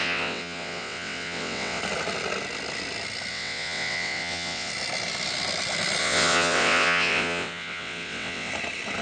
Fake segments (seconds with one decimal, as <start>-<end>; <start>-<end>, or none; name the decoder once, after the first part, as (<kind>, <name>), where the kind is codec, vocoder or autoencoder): 0.0-1.8 (vocoder, WaveNeXt); 3.3-4.7; 6.0-8.5